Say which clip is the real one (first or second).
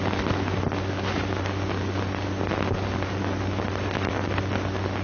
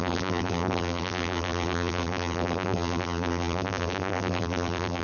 first